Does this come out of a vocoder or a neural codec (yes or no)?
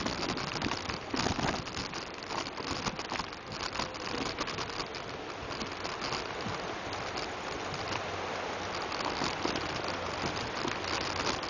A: no